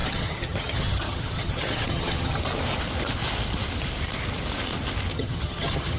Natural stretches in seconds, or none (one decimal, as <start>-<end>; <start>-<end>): 2.4-5.1